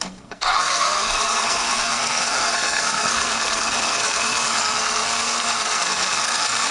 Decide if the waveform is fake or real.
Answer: fake